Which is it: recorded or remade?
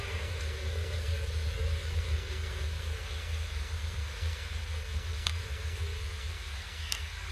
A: remade